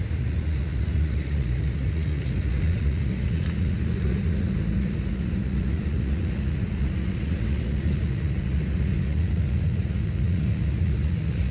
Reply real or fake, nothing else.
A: fake